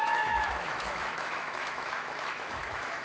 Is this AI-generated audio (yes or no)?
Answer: yes